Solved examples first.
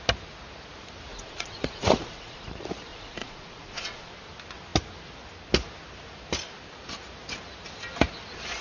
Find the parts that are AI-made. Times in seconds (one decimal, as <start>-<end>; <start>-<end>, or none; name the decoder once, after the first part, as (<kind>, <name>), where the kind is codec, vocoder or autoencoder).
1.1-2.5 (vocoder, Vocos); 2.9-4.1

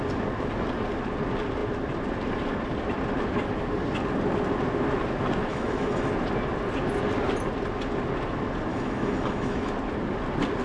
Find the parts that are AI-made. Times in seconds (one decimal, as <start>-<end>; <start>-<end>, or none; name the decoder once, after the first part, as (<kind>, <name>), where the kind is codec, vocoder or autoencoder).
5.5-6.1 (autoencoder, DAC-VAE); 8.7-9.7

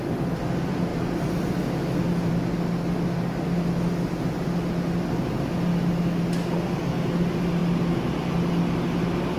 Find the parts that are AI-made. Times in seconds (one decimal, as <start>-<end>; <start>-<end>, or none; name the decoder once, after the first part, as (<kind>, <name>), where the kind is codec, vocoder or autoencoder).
5.7-6.2 (autoencoder, DAC-VAE)